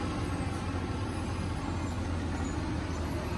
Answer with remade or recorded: recorded